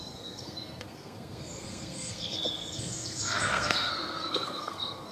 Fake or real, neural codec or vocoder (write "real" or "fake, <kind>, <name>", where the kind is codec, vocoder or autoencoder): fake, codec, SNAC